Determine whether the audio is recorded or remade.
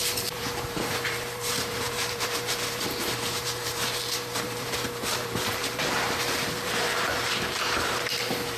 remade